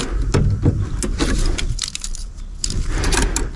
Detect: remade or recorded recorded